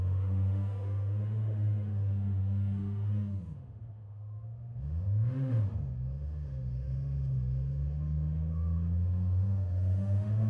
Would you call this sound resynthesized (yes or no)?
yes